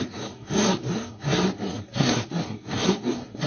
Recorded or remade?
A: remade